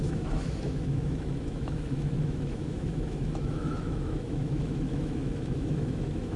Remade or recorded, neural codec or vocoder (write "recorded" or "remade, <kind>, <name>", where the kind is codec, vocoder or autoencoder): remade, autoencoder, DAC-VAE